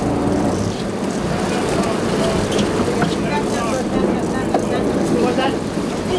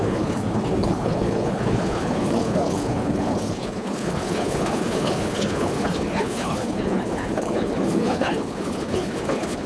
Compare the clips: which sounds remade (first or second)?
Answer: second